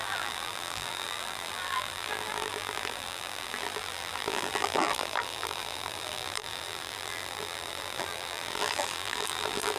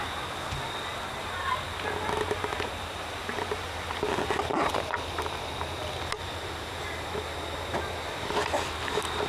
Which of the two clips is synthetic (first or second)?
first